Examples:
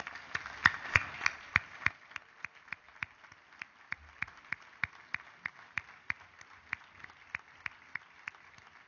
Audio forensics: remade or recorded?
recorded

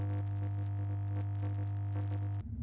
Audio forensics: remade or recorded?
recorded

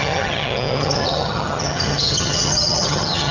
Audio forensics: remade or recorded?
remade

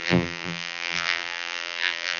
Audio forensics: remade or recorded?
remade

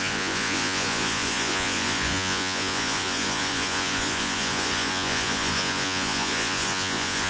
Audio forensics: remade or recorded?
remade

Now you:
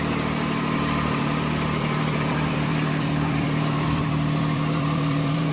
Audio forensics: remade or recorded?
remade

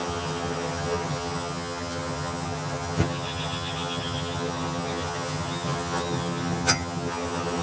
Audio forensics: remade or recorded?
remade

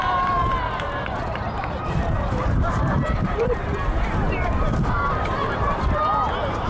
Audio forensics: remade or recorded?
remade